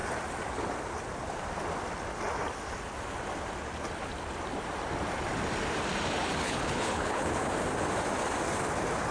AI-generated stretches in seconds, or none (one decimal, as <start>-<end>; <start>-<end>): 6.4-7.5